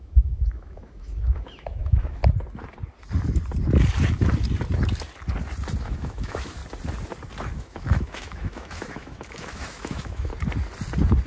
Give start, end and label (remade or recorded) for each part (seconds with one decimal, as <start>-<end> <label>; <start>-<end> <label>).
0.0-2.2 remade; 2.2-5.8 recorded; 5.8-6.6 remade; 6.6-7.6 recorded; 7.6-10.3 remade; 10.3-11.3 recorded